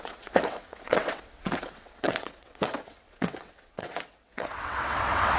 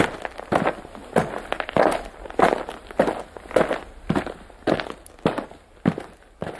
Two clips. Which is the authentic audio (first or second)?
second